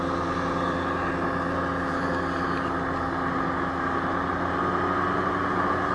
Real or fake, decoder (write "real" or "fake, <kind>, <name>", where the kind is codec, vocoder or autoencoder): real